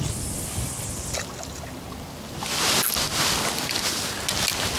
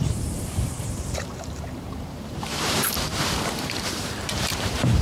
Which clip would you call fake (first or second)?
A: second